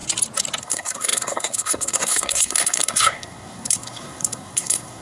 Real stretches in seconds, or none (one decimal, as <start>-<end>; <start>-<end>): 0.0-0.6